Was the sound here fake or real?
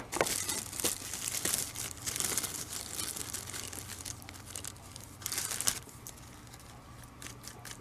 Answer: real